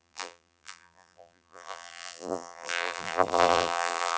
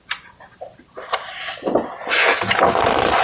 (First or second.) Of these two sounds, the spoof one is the first